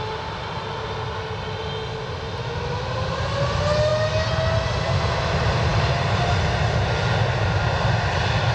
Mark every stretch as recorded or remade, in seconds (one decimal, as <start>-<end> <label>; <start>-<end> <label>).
0.0-8.5 recorded